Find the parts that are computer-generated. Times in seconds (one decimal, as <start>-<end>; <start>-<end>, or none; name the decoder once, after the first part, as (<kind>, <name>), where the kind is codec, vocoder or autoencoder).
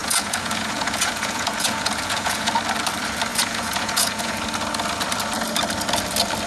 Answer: 0.0-2.5 (vocoder, Vocos); 3.3-4.4